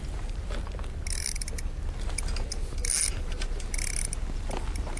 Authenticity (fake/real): real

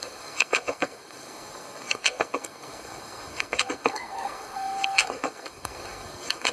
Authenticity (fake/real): fake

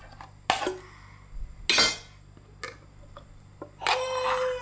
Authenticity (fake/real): real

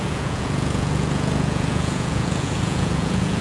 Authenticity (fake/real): fake